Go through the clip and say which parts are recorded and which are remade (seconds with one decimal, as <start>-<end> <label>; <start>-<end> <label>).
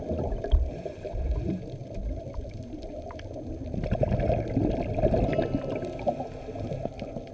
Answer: 0.0-7.3 recorded